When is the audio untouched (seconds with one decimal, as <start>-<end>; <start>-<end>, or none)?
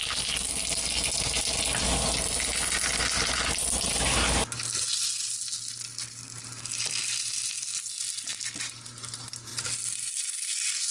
0.0-10.9